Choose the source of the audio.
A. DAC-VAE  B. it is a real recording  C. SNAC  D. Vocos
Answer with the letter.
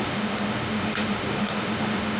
A